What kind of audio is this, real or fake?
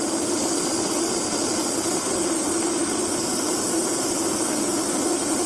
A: real